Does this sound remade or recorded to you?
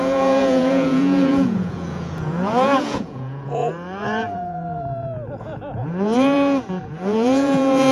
remade